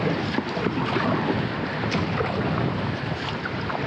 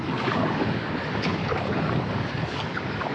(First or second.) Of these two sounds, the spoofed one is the second